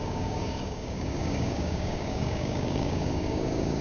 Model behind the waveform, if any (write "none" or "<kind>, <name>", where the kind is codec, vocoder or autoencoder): codec, DAC